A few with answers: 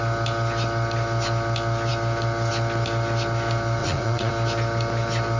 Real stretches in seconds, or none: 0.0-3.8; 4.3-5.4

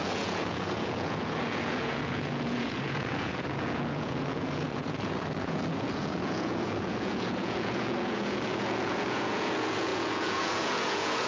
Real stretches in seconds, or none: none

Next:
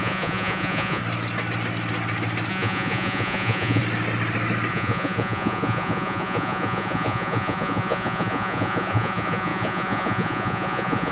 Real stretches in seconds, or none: 1.0-2.5; 3.8-4.7

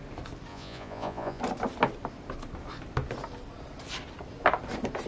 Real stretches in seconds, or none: 0.0-0.5; 1.4-5.1

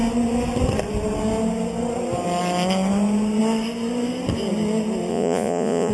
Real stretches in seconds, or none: 0.0-5.1

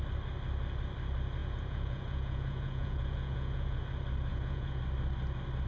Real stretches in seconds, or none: 0.0-1.4; 3.8-4.3; 4.8-5.7